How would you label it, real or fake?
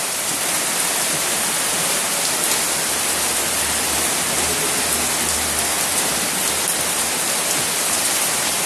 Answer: real